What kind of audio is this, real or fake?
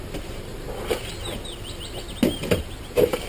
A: real